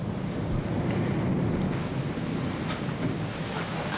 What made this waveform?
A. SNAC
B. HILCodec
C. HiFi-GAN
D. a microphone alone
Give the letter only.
D